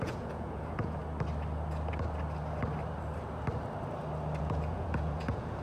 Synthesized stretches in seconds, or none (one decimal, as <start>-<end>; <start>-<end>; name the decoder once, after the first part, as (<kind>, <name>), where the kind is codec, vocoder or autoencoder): 0.0-1.0 (vocoder, Vocos); 4.4-5.6

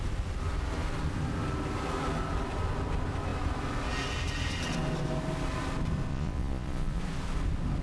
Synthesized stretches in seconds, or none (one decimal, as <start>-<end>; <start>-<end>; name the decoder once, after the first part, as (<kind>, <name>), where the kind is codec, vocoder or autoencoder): 6.1-7.0 (vocoder, Vocos)